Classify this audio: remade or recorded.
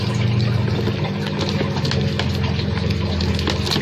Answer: recorded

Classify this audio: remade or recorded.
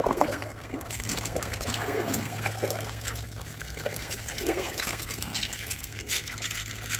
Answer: remade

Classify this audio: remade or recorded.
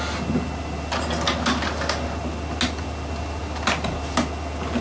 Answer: recorded